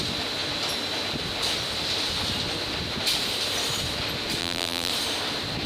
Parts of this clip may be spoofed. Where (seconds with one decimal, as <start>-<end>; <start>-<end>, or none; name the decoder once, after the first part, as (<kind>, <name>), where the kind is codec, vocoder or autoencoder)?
4.4-4.9 (vocoder, BigVGAN v2)